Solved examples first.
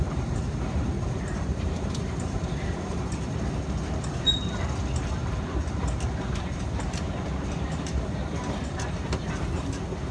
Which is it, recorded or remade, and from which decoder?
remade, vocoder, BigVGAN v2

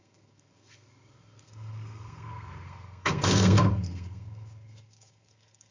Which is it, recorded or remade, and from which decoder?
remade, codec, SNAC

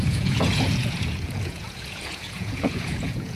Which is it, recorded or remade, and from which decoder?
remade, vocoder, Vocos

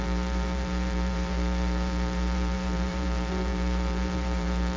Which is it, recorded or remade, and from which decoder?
remade, vocoder, BigVGAN v2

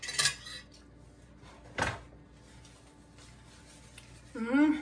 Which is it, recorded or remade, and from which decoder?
recorded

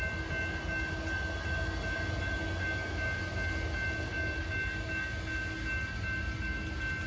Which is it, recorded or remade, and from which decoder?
recorded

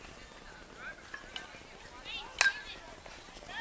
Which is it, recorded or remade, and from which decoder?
recorded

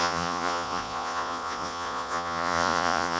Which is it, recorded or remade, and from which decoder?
remade, vocoder, Vocos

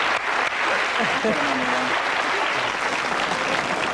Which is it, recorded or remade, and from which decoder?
recorded